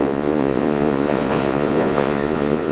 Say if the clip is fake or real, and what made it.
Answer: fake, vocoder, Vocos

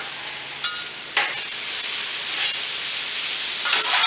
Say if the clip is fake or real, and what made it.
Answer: real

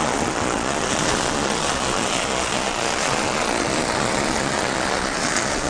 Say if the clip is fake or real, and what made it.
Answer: fake, vocoder, Vocos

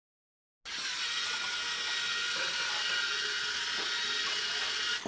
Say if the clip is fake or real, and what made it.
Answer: real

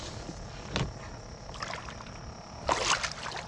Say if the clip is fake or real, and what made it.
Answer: real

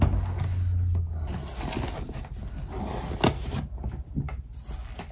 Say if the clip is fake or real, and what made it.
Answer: real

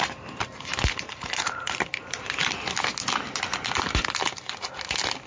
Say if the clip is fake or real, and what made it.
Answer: real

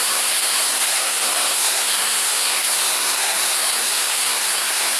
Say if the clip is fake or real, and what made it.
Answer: fake, codec, SNAC